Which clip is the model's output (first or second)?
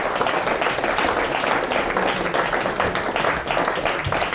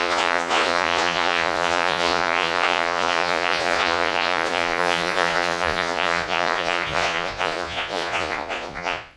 second